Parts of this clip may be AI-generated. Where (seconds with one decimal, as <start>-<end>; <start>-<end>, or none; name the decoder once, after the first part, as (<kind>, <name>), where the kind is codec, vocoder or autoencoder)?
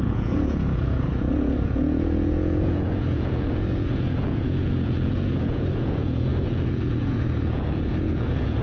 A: 0.0-8.6 (vocoder, Vocos)